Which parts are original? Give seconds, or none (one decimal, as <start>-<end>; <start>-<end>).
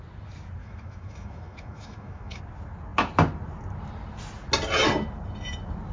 0.0-0.6; 2.4-5.9